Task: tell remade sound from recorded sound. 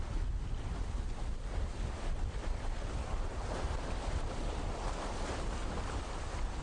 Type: recorded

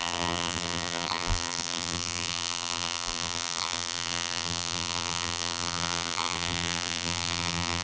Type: remade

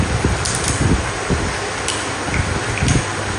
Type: recorded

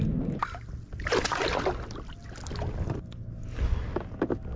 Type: recorded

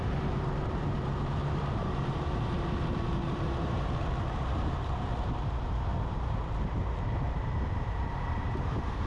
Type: remade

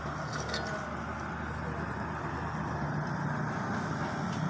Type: recorded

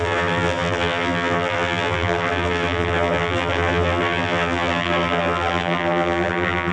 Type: remade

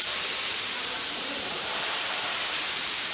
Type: remade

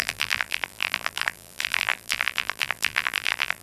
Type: remade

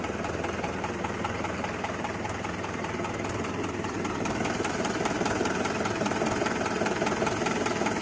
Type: remade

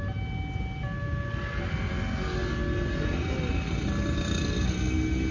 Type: recorded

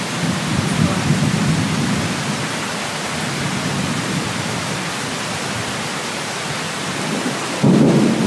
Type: remade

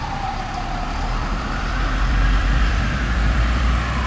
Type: remade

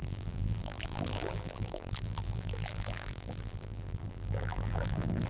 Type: remade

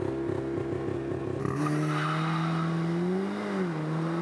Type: recorded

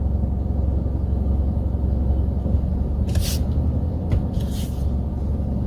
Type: recorded